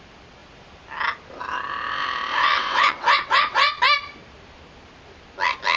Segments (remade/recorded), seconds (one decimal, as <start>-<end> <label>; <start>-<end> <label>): 0.0-2.4 recorded; 2.4-3.8 remade; 3.8-5.8 recorded